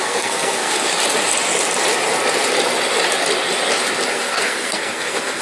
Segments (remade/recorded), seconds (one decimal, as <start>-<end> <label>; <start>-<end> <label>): 0.0-0.9 remade; 0.9-4.1 recorded; 4.1-5.4 remade